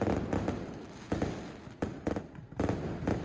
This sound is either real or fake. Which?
real